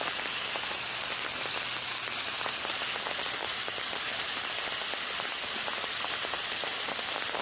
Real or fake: real